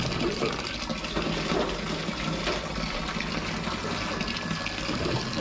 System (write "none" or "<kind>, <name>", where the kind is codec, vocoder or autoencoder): none